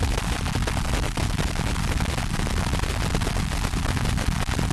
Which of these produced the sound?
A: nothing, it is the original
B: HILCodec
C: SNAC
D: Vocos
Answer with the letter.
A